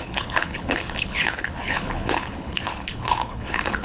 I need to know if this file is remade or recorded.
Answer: remade